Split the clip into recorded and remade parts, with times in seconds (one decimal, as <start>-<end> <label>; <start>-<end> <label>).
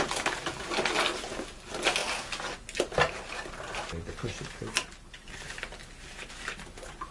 0.0-7.1 recorded